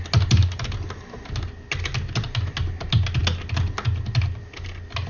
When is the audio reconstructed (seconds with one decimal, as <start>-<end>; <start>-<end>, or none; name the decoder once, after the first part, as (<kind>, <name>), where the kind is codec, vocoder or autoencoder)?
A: none